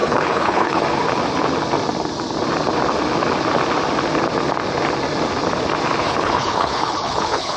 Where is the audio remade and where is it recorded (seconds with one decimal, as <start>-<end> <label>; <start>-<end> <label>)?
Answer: 0.0-0.8 remade; 0.8-6.0 recorded; 6.0-7.6 remade